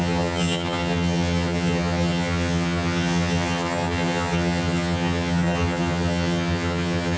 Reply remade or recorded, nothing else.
remade